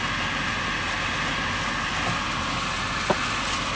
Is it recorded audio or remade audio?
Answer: recorded